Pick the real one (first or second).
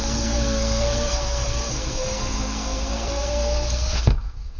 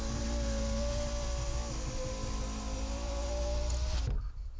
second